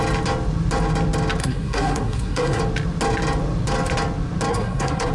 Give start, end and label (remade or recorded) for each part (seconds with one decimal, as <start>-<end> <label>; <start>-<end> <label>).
0.0-1.4 recorded; 1.4-2.6 remade; 2.6-4.5 recorded; 4.5-5.1 remade

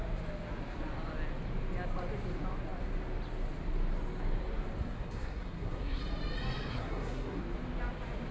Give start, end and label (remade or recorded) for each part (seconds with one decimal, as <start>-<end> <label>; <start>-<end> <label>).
0.0-4.8 recorded; 4.8-6.0 remade; 6.0-6.7 recorded; 6.7-7.4 remade; 7.4-8.3 recorded

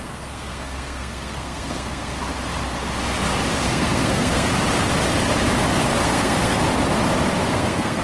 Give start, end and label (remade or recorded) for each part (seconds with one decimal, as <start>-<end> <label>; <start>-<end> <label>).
0.0-2.2 remade; 2.2-3.6 recorded; 3.6-4.5 remade; 4.5-6.0 recorded; 6.0-6.6 remade; 6.6-7.5 recorded; 7.5-8.0 remade

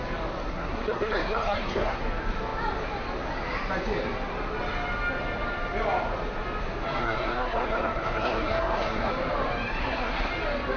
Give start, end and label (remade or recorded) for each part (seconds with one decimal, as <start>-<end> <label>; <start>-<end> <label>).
0.0-0.5 recorded; 0.5-2.0 remade; 2.0-7.0 recorded; 7.0-9.1 remade; 9.1-9.8 recorded; 9.8-10.3 remade; 10.3-10.8 recorded

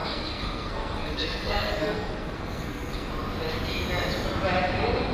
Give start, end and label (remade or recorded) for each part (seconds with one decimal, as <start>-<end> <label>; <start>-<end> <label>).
0.0-3.1 remade; 3.1-5.1 recorded

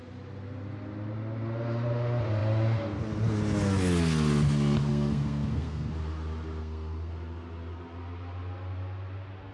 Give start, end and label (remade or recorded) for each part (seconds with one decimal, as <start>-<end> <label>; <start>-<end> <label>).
0.0-4.9 recorded; 4.9-5.9 remade; 5.9-6.6 recorded; 6.6-7.1 remade; 7.1-9.5 recorded

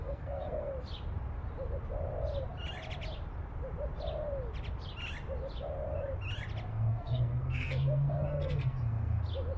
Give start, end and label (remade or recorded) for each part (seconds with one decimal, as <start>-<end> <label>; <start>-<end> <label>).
0.0-0.7 remade; 0.7-6.7 recorded; 6.7-9.2 remade; 9.2-9.6 recorded

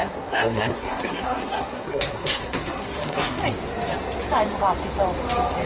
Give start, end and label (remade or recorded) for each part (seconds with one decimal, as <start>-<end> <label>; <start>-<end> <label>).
0.0-3.4 remade; 3.4-5.7 recorded